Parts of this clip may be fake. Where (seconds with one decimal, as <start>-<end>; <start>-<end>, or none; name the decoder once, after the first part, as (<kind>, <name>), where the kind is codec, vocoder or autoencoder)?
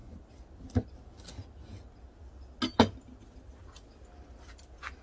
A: none